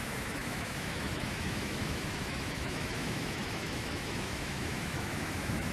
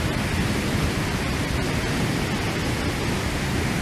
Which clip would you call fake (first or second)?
first